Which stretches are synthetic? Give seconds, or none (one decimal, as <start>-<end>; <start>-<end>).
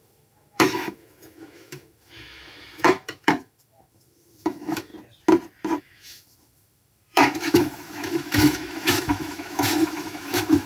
0.0-4.9; 5.8-10.7